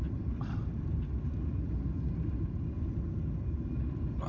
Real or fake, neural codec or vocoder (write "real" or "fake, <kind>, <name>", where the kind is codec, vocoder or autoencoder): real